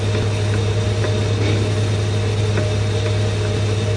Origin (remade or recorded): recorded